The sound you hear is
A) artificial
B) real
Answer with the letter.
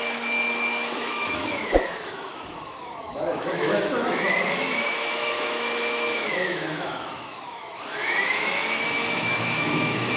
A